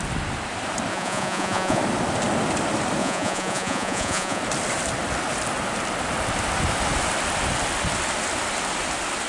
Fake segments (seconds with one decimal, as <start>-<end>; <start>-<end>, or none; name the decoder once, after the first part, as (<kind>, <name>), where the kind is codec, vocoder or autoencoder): 0.9-1.8 (vocoder, Vocos); 3.0-4.4